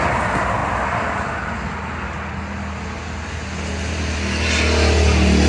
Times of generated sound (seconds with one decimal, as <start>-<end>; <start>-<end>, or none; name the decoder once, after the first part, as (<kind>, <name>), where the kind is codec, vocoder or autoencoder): none